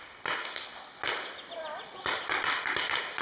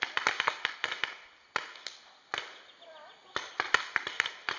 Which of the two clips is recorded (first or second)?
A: second